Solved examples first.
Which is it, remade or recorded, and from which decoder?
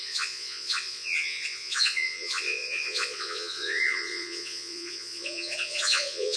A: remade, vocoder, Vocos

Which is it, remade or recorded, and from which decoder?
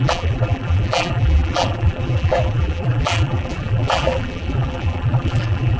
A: remade, vocoder, BigVGAN v2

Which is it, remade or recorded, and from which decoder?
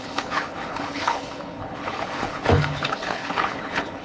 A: remade, codec, HILCodec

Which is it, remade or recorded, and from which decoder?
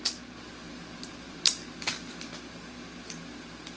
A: recorded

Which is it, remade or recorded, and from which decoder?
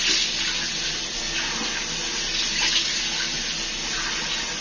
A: recorded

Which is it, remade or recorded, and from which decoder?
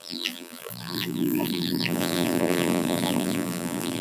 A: remade, vocoder, BigVGAN v2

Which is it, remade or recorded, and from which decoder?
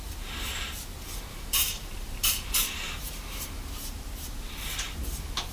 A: remade, vocoder, BigVGAN v2